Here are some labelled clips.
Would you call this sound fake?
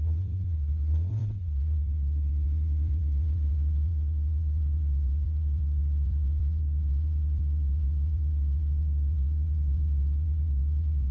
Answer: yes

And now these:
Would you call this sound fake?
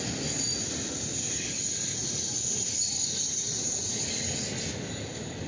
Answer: no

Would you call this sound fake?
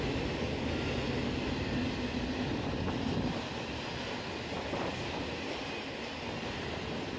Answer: no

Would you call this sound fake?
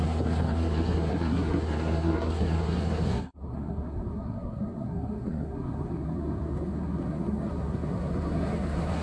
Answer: yes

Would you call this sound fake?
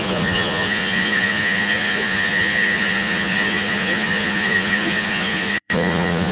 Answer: yes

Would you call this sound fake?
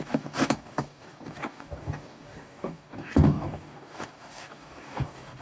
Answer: yes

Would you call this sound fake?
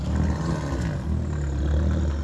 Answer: no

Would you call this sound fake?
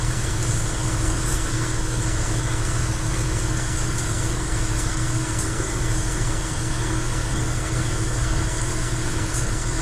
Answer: yes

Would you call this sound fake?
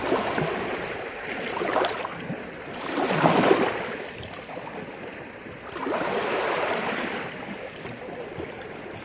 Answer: yes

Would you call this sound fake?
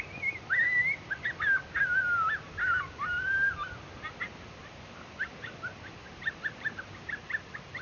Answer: no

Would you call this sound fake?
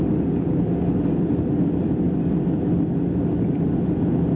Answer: no